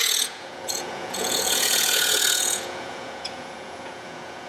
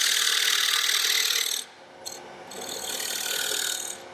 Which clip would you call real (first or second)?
second